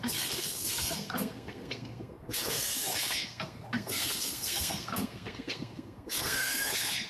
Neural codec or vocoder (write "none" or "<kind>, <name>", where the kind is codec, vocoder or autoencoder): codec, SNAC